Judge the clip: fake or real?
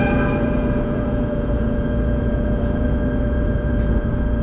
fake